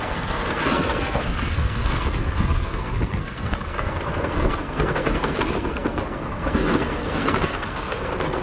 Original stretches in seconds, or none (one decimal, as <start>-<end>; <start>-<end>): none